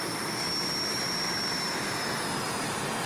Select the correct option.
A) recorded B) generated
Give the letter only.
A